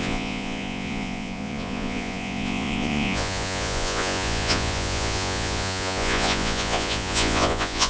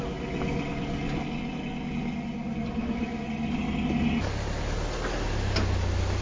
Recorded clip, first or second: second